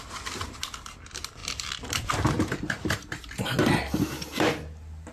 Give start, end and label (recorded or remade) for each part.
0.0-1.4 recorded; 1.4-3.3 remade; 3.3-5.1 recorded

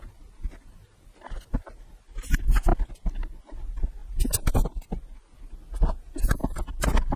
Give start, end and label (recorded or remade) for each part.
0.0-7.2 recorded

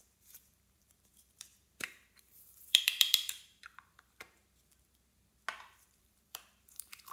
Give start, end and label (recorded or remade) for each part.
0.0-4.4 remade; 4.4-5.5 recorded; 5.5-7.1 remade